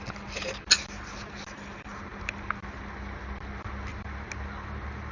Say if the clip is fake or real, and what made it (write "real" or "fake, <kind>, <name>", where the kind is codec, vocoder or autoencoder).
real